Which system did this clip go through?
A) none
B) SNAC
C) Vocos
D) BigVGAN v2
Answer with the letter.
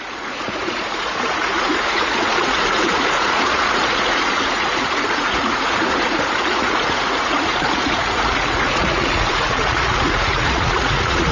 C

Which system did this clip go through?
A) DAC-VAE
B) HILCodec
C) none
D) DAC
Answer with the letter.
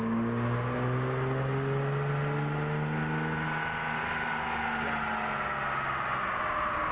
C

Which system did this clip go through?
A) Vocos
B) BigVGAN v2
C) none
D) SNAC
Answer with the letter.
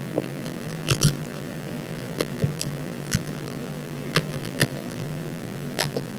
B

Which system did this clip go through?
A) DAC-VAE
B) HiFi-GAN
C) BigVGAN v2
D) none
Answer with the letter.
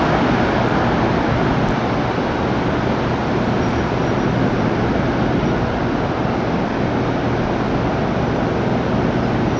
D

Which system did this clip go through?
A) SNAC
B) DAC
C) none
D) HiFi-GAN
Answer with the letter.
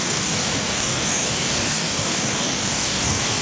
B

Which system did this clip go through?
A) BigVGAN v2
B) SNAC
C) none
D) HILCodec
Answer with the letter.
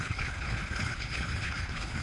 D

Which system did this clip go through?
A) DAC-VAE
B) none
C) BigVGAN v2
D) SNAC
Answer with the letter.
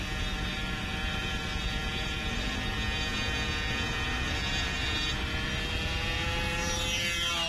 B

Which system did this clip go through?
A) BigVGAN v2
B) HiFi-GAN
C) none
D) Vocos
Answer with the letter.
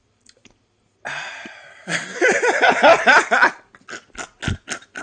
C